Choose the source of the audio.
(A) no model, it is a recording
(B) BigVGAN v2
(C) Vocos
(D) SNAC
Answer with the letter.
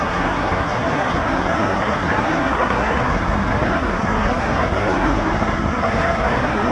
D